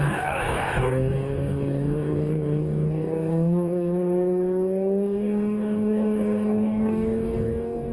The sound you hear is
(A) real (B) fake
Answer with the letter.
B